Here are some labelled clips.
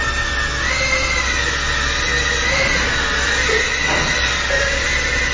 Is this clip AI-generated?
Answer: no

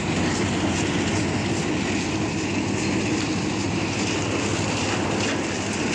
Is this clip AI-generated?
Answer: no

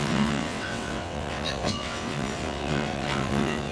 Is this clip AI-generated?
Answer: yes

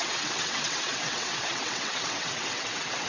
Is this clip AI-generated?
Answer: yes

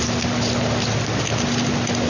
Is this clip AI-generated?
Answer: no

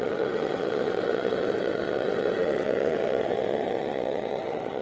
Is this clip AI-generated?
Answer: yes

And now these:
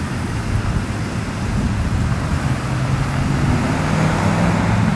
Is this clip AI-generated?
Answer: no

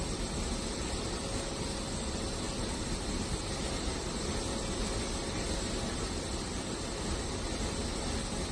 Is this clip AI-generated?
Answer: no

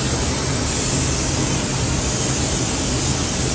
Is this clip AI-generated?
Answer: no